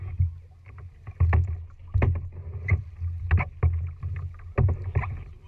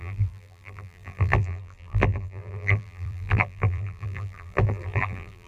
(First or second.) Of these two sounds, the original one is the first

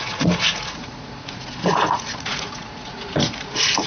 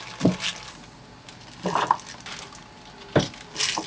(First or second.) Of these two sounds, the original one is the second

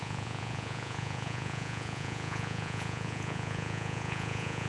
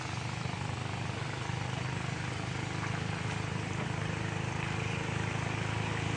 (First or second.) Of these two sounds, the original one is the second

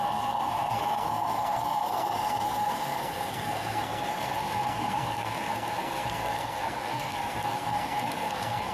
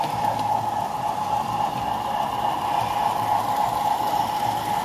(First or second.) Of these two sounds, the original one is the second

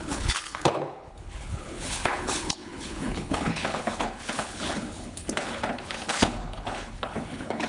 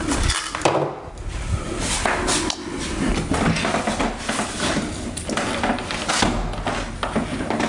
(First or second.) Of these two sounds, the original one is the second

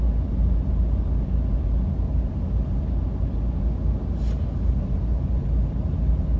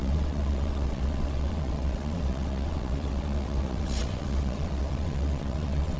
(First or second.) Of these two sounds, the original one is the first